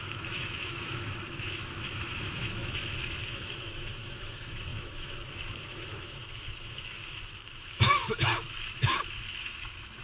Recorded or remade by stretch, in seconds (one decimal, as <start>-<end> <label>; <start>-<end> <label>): 0.0-10.0 remade